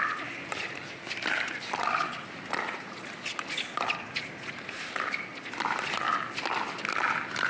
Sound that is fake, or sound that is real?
real